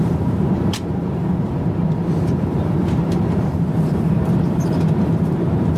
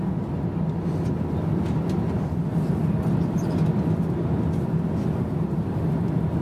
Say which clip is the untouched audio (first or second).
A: second